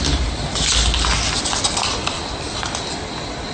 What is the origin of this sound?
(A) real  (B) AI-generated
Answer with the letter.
A